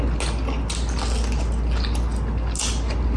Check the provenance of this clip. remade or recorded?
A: recorded